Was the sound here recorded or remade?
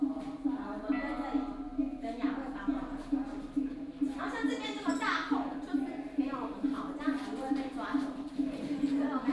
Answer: recorded